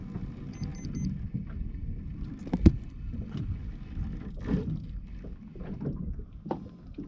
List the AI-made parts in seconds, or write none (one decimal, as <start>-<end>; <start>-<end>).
none